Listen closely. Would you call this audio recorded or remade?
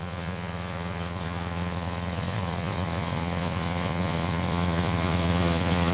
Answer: remade